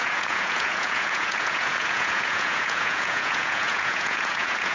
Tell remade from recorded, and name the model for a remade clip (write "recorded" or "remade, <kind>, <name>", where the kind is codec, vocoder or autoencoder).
remade, vocoder, Vocos